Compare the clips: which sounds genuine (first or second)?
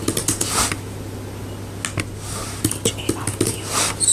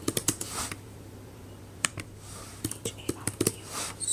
first